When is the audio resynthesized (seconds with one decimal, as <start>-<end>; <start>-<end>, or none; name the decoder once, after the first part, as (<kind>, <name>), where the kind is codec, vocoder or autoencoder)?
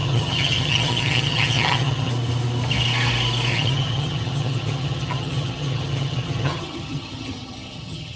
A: 0.0-2.1 (vocoder, HiFi-GAN); 3.5-8.2